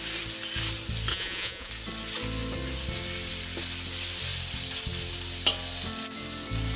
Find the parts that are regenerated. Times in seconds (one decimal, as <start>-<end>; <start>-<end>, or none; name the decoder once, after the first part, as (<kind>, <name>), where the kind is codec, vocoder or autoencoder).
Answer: 1.1-1.7 (vocoder, Vocos)